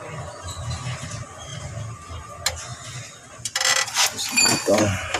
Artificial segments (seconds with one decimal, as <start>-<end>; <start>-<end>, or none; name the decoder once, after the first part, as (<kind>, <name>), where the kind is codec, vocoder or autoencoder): none